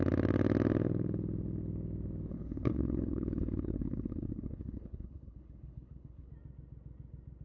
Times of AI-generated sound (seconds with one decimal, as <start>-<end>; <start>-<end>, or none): 2.3-6.3

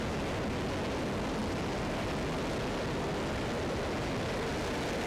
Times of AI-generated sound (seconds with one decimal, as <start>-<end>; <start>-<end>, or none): none

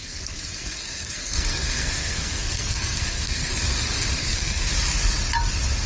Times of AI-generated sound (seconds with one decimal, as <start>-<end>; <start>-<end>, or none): 0.0-3.5; 4.2-4.7

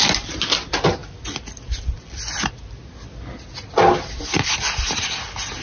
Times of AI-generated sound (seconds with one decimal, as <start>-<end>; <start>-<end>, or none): none

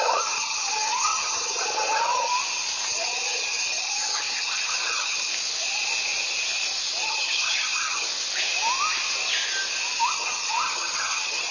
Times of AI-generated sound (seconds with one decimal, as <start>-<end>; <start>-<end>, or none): 0.0-2.3; 2.9-5.3; 7.1-8.1; 10.1-11.5

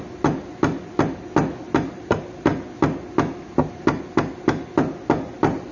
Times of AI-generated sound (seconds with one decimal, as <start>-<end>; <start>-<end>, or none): none